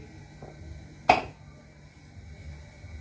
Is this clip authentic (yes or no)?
yes